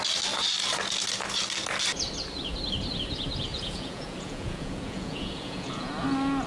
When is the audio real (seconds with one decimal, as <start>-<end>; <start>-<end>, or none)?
0.0-3.5; 5.9-6.5